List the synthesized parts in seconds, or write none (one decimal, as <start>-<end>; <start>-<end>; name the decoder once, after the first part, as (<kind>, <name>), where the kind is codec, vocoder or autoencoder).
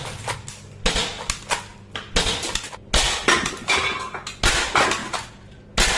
none